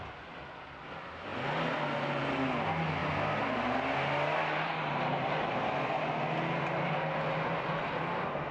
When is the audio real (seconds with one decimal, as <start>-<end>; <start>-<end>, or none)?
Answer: 0.0-8.5